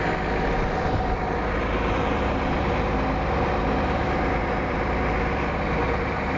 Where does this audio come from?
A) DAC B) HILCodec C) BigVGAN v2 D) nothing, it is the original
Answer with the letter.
D